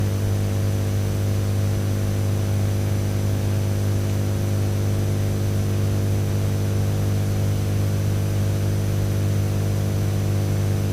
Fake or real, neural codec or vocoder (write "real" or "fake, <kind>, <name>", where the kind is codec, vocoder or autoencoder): real